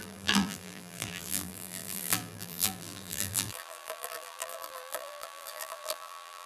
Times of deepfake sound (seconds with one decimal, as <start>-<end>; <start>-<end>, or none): 0.0-6.5